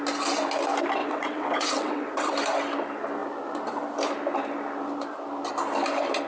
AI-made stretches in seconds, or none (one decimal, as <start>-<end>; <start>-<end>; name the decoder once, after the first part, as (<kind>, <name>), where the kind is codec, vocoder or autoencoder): 1.0-2.3 (vocoder, WaveNeXt)

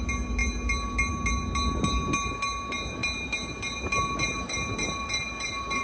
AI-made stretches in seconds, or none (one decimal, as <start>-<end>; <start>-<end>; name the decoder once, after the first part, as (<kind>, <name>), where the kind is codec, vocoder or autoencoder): none